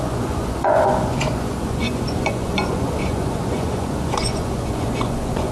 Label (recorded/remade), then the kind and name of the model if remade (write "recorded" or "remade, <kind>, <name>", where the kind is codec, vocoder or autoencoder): remade, vocoder, Vocos